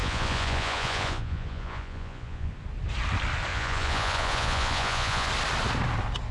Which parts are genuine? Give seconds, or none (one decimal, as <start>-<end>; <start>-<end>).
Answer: 2.5-3.5; 5.3-6.3